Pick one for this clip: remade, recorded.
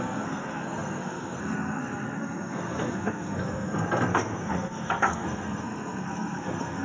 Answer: remade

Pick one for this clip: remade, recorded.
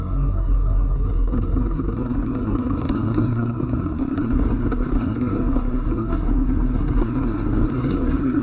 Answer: remade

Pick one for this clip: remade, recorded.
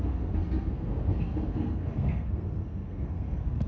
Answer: remade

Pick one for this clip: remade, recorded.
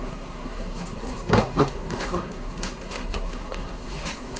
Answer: remade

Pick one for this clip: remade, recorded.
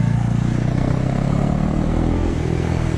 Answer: remade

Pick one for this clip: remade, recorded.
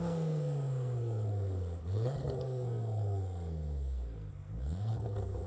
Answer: remade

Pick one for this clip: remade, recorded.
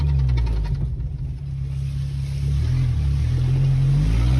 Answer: recorded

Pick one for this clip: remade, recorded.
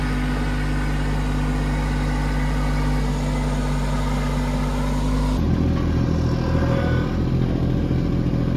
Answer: recorded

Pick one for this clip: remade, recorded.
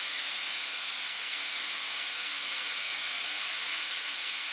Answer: remade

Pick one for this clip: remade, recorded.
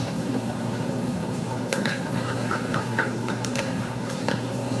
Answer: remade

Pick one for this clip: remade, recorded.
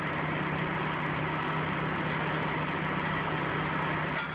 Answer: recorded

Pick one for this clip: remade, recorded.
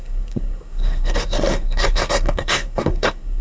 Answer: remade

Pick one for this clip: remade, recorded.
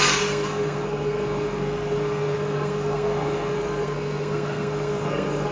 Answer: remade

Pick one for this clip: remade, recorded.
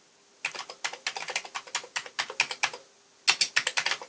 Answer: recorded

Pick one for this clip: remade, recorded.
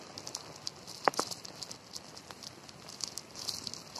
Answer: recorded